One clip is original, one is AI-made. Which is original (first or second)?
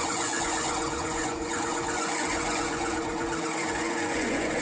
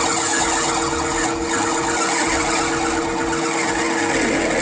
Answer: second